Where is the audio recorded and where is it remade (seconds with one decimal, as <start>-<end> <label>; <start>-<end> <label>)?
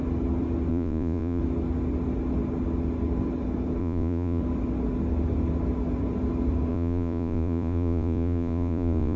0.0-0.7 recorded; 0.7-1.4 remade; 1.4-3.8 recorded; 3.8-4.4 remade; 4.4-6.7 recorded; 6.7-9.2 remade